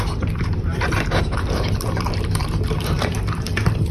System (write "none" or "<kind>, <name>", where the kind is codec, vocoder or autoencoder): vocoder, BigVGAN v2